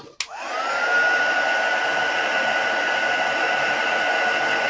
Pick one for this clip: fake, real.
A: real